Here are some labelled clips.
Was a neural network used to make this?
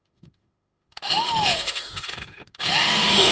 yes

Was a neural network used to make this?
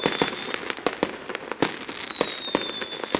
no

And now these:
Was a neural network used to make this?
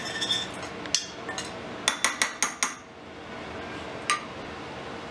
no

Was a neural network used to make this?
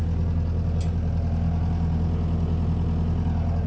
no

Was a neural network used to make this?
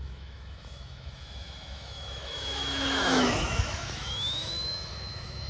yes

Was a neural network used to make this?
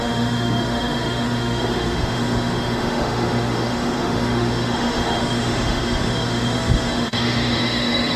yes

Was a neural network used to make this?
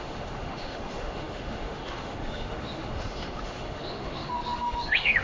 yes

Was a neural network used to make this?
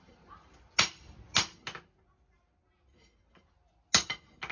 no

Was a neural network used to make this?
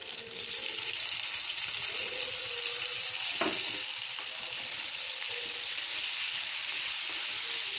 no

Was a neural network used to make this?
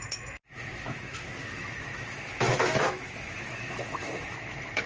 yes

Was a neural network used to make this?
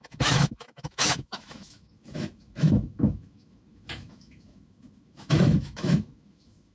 yes